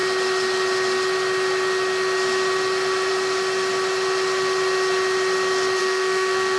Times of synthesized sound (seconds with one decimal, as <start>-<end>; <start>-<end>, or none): 5.8-6.6